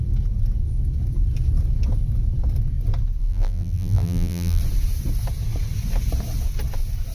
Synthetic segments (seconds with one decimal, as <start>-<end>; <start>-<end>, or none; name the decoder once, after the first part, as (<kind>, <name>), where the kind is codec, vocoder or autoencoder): 3.2-4.6 (vocoder, BigVGAN v2)

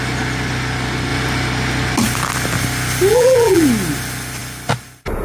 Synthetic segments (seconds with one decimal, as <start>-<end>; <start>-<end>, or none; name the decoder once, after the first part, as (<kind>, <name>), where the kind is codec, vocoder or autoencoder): 3.1-3.6 (vocoder, BigVGAN v2)

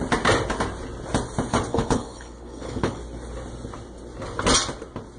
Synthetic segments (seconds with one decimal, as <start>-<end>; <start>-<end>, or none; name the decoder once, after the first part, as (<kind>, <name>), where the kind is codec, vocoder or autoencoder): 1.7-3.0 (codec, HILCodec)

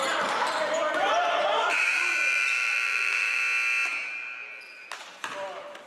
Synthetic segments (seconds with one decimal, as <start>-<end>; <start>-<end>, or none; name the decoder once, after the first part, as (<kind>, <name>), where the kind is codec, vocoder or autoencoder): 0.0-3.4 (vocoder, BigVGAN v2)

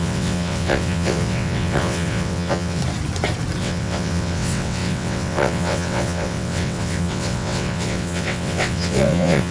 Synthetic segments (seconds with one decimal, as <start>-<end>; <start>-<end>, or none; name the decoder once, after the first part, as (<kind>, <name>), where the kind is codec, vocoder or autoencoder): 0.0-2.8 (vocoder, WaveNeXt); 3.6-9.5

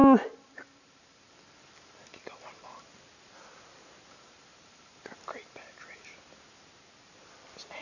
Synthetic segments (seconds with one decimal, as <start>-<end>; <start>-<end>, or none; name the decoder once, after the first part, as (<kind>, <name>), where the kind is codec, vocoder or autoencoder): none